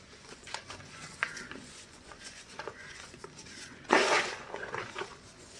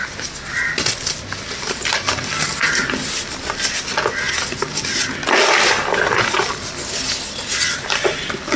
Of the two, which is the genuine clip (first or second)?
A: second